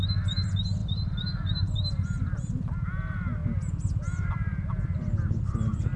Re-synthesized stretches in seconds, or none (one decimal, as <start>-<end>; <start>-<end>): none